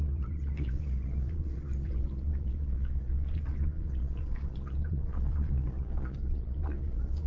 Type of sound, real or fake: fake